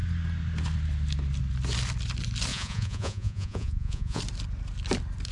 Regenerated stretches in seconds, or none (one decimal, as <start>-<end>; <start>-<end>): 2.5-4.2